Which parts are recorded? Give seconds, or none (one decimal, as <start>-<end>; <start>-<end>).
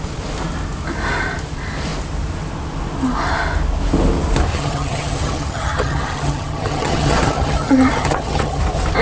0.0-4.5; 8.6-9.0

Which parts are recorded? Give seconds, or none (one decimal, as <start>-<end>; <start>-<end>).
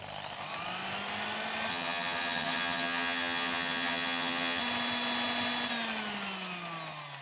0.0-1.7; 4.6-7.2